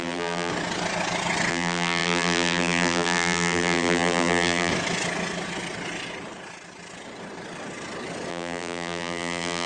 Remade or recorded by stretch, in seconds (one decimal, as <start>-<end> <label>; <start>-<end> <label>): 0.0-0.5 remade; 0.5-1.5 recorded; 1.5-4.7 remade; 4.7-8.3 recorded; 8.3-9.7 remade